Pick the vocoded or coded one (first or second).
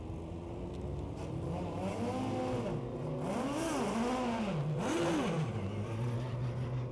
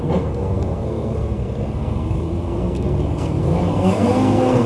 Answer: second